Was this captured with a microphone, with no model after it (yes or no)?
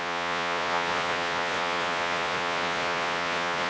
no